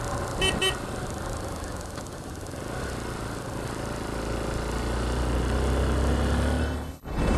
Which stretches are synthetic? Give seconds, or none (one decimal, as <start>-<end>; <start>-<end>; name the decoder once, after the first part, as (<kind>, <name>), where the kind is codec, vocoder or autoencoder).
6.6-7.4 (codec, HILCodec)